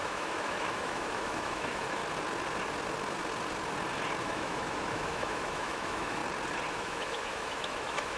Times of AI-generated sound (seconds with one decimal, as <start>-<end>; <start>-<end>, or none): 0.0-2.0; 4.2-6.2; 6.7-8.2